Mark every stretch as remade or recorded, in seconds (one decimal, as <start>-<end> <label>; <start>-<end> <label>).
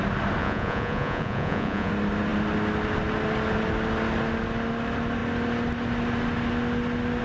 0.0-0.4 recorded; 0.4-1.9 remade; 1.9-7.2 recorded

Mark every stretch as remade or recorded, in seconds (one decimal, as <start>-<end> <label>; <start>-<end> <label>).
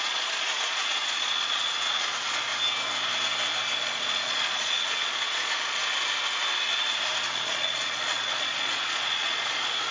0.0-2.5 remade; 2.5-3.8 recorded; 3.8-5.8 remade; 5.8-7.3 recorded; 7.3-9.9 remade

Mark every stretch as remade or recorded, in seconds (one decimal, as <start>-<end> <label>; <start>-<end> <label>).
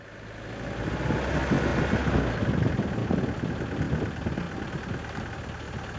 0.0-6.0 recorded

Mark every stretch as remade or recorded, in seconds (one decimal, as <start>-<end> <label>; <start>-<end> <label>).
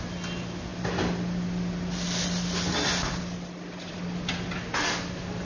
0.0-5.4 recorded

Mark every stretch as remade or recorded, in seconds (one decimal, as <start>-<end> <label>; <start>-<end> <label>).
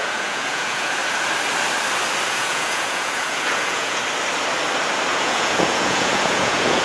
0.0-1.0 remade; 1.0-2.3 recorded; 2.3-4.0 remade; 4.0-5.1 recorded; 5.1-6.8 remade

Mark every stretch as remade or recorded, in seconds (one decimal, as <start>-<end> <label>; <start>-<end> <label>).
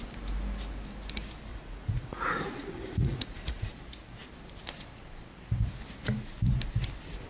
0.0-1.5 recorded; 1.5-3.7 remade; 3.7-7.3 recorded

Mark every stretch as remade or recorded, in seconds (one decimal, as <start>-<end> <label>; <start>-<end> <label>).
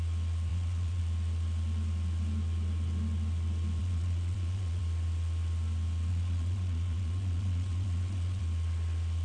0.0-0.5 recorded; 0.5-1.0 remade; 1.0-3.8 recorded; 3.8-4.8 remade; 4.8-6.1 recorded; 6.1-8.4 remade; 8.4-9.2 recorded